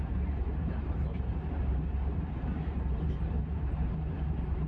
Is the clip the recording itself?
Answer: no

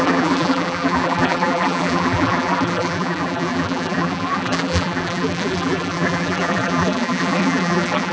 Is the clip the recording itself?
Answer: no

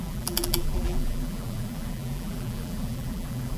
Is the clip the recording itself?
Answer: no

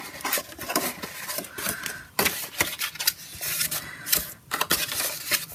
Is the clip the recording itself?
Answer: yes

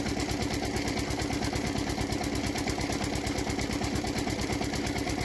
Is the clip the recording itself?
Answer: no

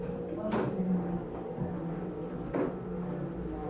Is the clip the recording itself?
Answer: yes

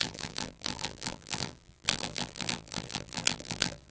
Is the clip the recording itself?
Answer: no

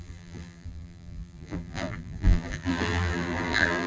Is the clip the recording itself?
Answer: no